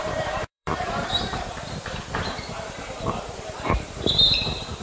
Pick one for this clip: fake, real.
fake